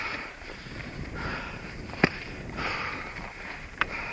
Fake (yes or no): yes